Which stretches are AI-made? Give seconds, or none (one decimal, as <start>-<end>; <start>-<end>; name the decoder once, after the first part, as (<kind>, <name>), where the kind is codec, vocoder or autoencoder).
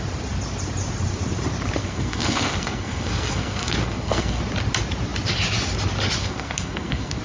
1.8-4.4 (codec, SNAC); 6.2-7.2